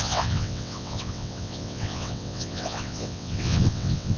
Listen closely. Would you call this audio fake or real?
fake